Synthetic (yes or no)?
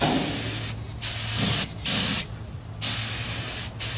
no